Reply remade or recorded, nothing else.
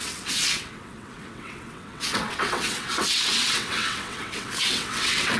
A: remade